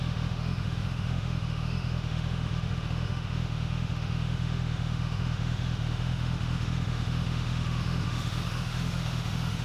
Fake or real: fake